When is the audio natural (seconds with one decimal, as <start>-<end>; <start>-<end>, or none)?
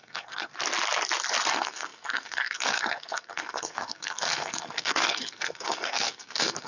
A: 0.5-1.5